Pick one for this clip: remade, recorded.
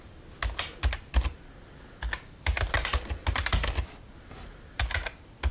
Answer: recorded